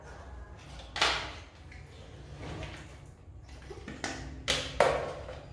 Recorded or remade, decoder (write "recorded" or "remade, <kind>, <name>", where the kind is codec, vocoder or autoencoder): recorded